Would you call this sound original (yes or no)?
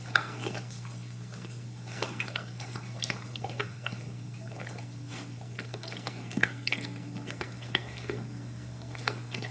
no